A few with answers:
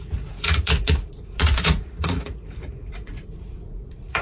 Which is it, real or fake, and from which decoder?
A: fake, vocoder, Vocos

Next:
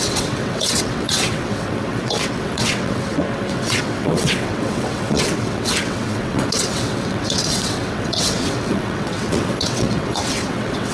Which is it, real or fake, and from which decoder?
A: fake, vocoder, WaveNeXt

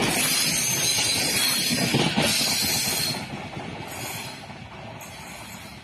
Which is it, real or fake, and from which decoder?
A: real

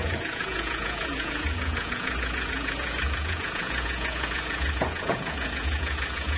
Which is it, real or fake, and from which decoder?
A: fake, vocoder, Vocos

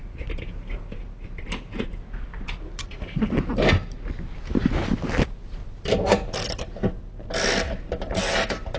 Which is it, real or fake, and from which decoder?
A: real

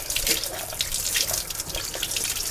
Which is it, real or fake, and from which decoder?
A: fake, vocoder, BigVGAN v2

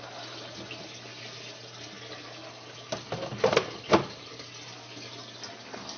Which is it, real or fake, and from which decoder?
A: real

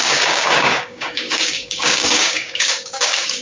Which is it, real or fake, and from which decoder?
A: fake, codec, DAC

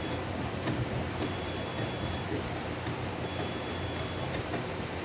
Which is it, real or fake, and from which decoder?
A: fake, vocoder, BigVGAN v2